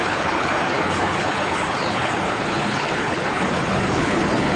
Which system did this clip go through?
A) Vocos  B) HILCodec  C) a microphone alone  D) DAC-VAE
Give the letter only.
B